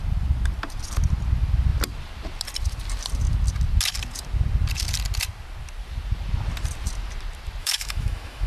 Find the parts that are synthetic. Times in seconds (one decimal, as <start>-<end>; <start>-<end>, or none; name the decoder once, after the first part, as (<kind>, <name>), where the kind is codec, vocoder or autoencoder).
7.6-8.5 (autoencoder, DAC-VAE)